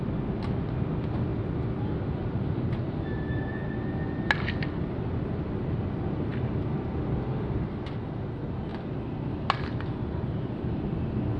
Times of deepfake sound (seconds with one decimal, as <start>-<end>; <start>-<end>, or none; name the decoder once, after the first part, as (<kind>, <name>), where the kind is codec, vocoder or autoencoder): none